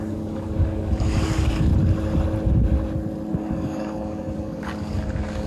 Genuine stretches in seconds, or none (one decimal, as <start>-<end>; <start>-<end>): 1.7-3.3